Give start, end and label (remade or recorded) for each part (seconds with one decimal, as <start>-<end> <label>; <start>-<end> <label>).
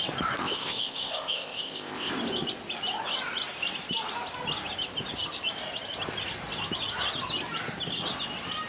0.0-0.4 recorded; 0.4-2.1 remade; 2.1-8.7 recorded